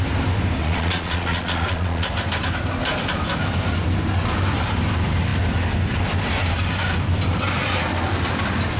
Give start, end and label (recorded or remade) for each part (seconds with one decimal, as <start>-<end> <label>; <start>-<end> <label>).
0.0-0.6 recorded; 0.6-2.1 remade; 2.1-8.8 recorded